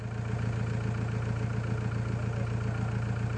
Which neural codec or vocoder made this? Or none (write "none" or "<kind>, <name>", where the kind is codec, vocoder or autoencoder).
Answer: none